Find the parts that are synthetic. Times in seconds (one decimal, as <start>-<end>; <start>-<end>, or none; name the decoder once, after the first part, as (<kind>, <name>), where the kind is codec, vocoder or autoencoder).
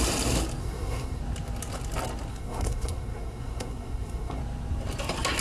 0.6-1.2 (codec, SNAC); 2.3-4.4